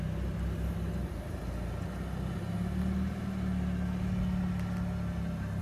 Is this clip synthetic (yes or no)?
no